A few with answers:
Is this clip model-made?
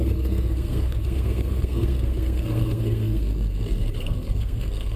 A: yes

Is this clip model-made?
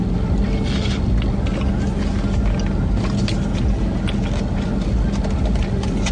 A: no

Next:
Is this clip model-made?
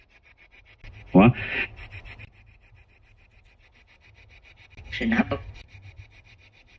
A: no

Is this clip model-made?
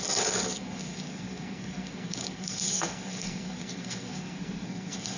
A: yes